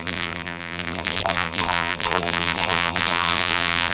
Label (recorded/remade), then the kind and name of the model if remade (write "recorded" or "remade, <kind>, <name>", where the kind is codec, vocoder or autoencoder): remade, vocoder, BigVGAN v2